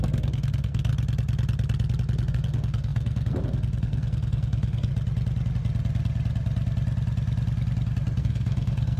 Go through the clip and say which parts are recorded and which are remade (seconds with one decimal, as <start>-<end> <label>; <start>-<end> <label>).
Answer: 0.0-0.9 remade; 0.9-2.3 recorded; 2.3-4.9 remade; 4.9-8.2 recorded; 8.2-9.0 remade